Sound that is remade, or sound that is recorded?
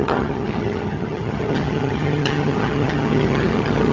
remade